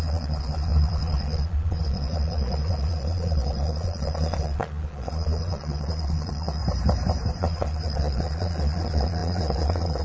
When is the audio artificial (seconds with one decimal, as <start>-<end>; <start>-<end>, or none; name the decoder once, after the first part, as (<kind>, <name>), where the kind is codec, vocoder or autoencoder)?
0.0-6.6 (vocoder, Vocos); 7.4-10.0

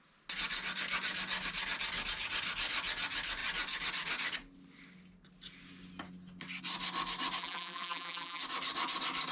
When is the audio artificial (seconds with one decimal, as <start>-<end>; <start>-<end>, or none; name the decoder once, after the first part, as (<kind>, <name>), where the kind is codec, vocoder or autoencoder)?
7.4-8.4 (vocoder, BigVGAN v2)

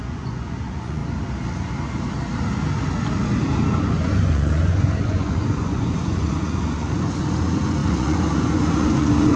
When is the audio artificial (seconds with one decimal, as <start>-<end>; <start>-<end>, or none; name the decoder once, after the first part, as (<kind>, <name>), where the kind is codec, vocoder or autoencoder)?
0.0-1.0 (vocoder, Vocos); 3.8-9.4

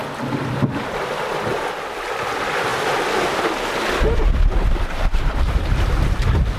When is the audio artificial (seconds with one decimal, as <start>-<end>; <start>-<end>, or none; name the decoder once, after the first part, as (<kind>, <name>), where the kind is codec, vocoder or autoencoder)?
none

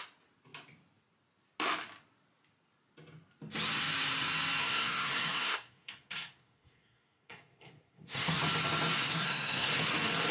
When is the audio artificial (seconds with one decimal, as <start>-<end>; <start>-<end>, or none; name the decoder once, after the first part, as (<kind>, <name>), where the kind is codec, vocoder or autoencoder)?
4.6-8.4 (codec, SNAC); 9.1-9.7

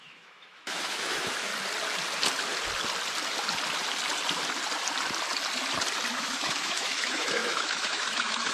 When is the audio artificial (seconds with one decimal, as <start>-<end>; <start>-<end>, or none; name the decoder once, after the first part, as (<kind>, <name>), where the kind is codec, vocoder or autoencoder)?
0.0-1.5 (autoencoder, DAC-VAE); 6.1-8.5

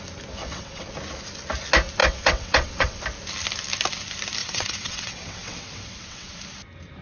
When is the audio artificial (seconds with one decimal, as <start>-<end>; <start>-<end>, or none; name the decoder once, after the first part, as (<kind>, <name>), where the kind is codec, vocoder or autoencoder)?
0.4-0.9 (vocoder, WaveNeXt); 2.0-3.0; 4.4-6.3